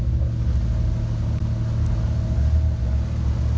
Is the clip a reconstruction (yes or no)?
no